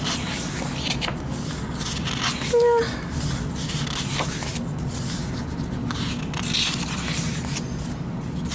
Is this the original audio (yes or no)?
yes